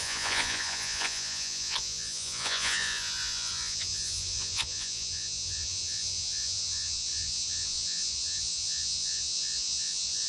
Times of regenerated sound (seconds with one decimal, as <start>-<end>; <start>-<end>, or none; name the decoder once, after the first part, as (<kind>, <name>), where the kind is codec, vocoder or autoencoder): 0.0-10.3 (vocoder, Vocos)